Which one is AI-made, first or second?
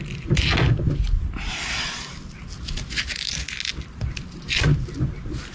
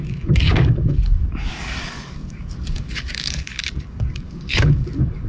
second